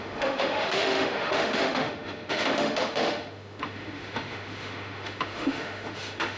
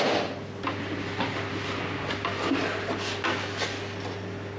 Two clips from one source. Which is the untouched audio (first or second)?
second